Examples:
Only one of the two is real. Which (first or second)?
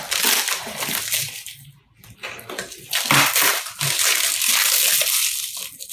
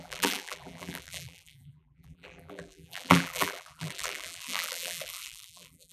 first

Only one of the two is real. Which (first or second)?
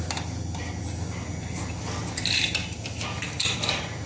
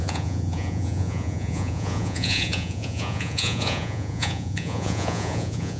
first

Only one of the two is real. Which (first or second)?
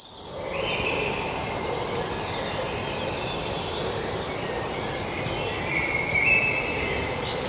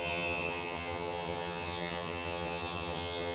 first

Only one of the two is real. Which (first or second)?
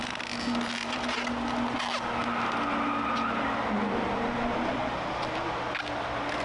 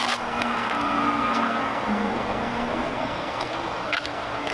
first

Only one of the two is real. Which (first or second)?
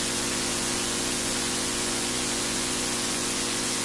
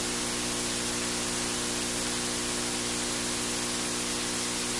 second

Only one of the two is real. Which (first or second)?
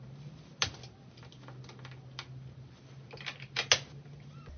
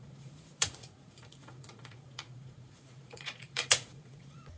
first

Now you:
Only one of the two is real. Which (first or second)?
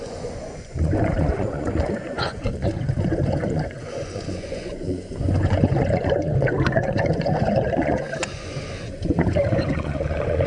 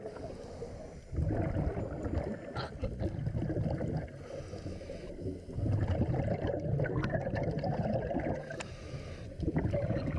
second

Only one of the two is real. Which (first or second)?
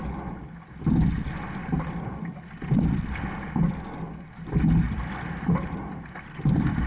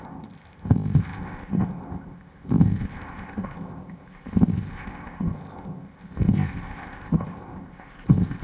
first